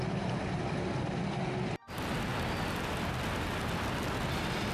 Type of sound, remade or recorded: recorded